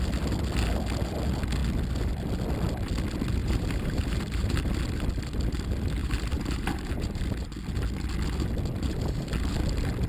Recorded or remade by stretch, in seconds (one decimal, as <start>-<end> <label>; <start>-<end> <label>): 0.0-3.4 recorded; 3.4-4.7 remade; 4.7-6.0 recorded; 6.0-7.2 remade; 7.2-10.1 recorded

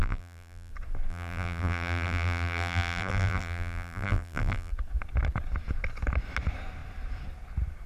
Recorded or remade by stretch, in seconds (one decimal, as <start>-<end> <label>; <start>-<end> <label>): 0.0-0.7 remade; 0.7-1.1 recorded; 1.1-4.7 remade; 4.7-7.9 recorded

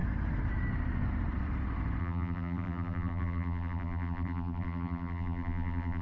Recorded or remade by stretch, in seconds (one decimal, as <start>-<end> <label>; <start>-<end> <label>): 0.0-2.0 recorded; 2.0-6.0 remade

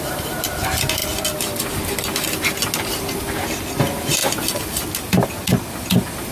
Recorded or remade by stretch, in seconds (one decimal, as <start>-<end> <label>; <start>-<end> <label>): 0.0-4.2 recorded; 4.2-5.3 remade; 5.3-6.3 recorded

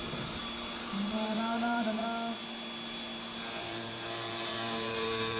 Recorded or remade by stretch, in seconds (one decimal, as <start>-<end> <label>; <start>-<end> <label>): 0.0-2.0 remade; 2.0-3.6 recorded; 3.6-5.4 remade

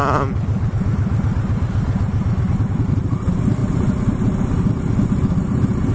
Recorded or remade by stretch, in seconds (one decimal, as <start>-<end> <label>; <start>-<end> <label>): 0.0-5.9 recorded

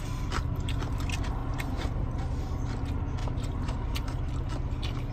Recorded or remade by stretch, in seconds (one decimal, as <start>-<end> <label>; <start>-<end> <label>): 0.0-1.4 recorded; 1.4-2.1 remade; 2.1-3.2 recorded; 3.2-4.3 remade; 4.3-5.1 recorded

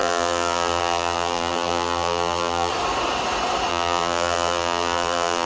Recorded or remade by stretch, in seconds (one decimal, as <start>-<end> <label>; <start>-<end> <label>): 0.0-2.7 remade; 2.7-3.7 recorded; 3.7-5.5 remade